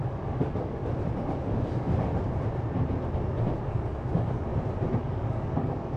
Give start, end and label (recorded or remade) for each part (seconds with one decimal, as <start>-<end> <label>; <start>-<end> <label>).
0.0-0.8 remade; 0.8-1.4 recorded; 1.4-2.1 remade; 2.1-3.4 recorded; 3.4-4.5 remade; 4.5-5.0 recorded; 5.0-6.0 remade